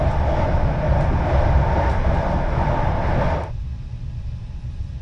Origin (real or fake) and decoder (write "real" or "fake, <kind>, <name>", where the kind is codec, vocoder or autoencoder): real